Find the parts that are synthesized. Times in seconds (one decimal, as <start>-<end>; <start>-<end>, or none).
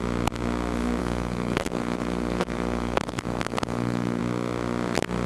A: 1.0-4.2